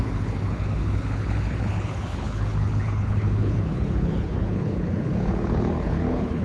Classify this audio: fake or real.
fake